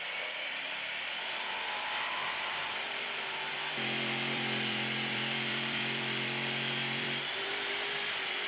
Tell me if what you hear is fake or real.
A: fake